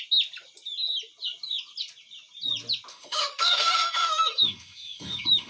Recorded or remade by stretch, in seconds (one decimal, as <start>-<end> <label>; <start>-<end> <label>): 0.0-2.9 recorded; 2.9-5.5 remade